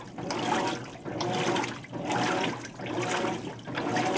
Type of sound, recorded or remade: recorded